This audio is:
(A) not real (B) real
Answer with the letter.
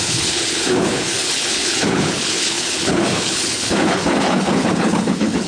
A